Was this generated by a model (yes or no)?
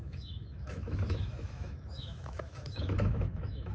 yes